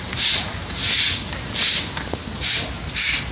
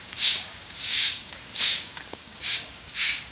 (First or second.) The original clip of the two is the first